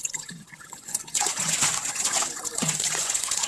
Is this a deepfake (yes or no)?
yes